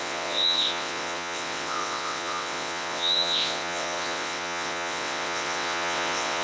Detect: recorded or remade remade